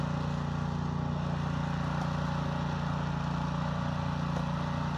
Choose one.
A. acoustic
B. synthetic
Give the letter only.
A